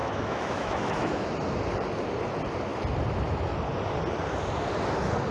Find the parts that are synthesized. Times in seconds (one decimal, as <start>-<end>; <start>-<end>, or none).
0.0-1.3